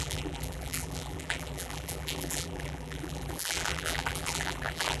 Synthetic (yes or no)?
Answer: yes